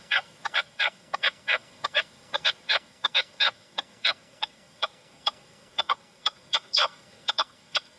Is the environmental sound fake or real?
fake